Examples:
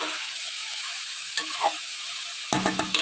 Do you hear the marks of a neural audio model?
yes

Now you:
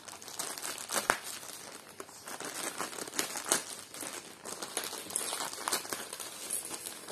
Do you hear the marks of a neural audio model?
no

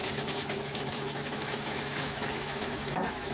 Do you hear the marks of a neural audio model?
yes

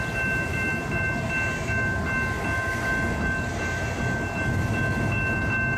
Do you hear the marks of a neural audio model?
no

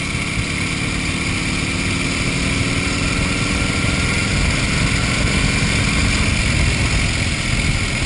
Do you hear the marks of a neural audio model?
no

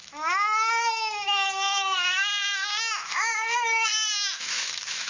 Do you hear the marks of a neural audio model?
yes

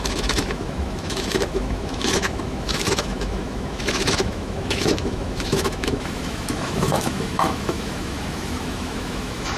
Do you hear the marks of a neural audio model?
yes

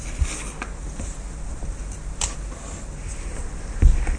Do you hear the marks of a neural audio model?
no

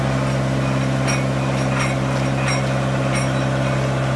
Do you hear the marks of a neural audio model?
no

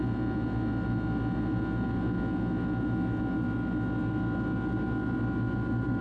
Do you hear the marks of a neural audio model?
no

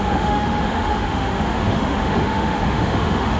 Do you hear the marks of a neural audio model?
yes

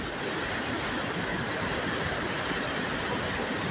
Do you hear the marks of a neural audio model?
no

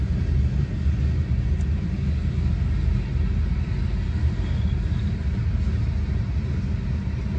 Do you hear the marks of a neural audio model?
no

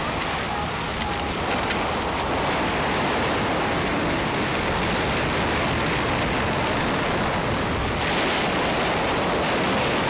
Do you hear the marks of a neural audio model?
no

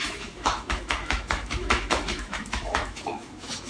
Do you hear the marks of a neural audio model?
yes